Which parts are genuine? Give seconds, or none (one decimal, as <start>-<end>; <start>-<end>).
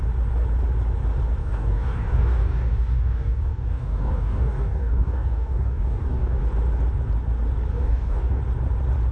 0.0-1.4; 6.4-7.7; 8.4-9.1